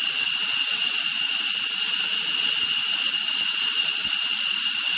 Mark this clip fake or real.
real